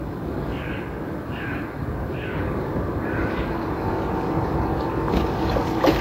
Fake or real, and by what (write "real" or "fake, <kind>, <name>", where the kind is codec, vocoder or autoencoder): fake, codec, DAC